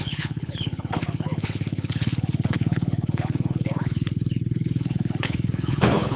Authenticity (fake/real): fake